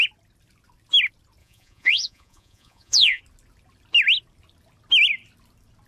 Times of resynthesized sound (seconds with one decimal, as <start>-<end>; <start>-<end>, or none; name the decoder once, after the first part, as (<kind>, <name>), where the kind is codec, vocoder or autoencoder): 1.4-3.2 (vocoder, Vocos)